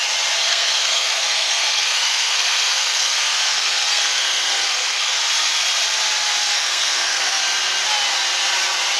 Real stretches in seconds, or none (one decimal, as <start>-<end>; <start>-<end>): 0.0-0.5; 5.3-6.4; 7.4-9.0